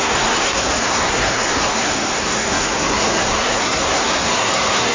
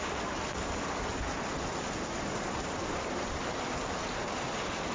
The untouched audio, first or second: second